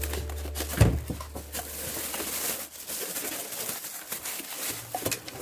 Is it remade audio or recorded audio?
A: recorded